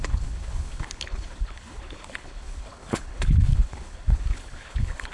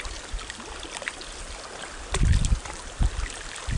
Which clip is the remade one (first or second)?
first